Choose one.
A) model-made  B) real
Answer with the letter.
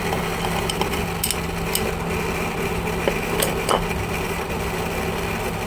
B